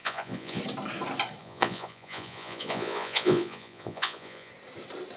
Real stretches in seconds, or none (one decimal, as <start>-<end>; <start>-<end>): 0.6-1.4; 4.5-5.2